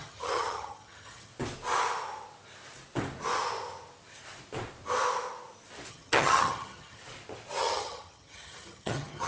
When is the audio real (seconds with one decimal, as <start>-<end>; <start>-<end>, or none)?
1.3-5.9; 7.0-7.6